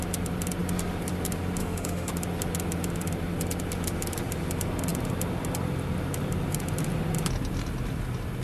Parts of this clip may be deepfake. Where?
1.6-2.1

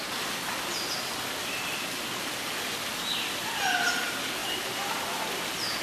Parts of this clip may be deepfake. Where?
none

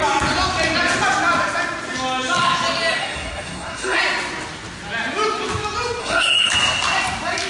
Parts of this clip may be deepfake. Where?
3.0-4.0; 6.0-6.5

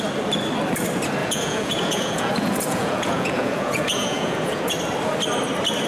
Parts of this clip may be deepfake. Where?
1.2-4.7